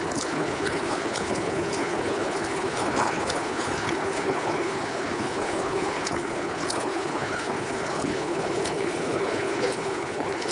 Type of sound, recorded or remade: remade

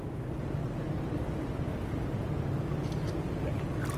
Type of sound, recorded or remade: recorded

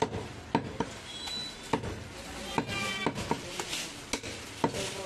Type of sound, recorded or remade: recorded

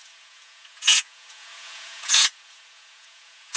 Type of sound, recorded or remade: remade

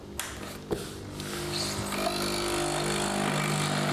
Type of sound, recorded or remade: recorded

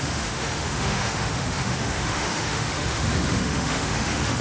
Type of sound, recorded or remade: remade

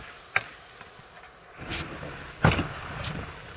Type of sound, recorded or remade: recorded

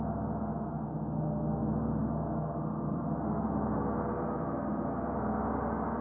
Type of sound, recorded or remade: recorded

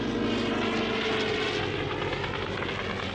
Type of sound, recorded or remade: recorded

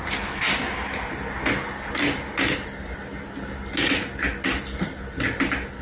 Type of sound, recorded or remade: recorded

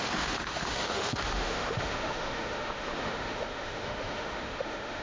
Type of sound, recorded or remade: remade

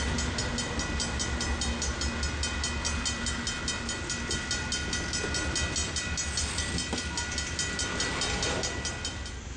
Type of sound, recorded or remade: recorded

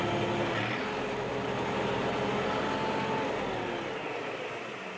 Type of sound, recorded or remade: recorded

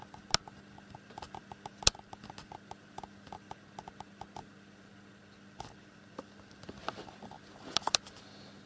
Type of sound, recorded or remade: recorded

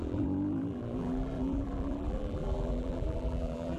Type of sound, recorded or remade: remade